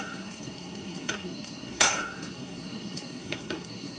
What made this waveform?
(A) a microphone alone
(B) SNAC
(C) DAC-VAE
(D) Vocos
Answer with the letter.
B